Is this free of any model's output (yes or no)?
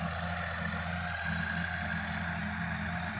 yes